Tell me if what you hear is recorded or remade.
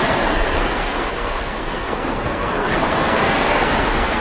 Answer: remade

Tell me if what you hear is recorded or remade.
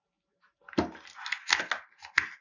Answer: recorded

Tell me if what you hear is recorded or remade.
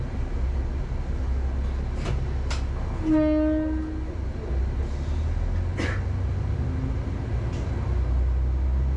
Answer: recorded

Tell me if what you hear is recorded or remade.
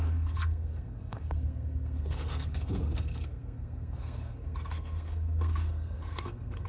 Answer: remade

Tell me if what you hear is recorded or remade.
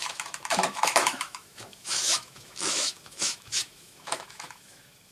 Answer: remade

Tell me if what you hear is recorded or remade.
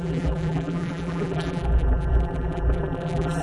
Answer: remade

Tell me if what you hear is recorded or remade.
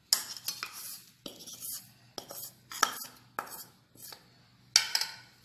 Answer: recorded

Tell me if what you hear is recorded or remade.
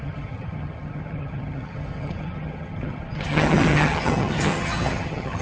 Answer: remade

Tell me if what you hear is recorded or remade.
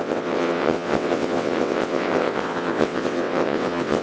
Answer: remade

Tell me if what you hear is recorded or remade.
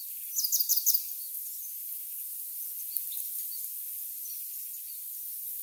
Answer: recorded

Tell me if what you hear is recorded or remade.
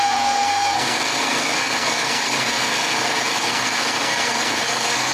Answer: remade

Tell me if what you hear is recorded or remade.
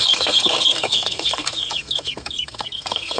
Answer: remade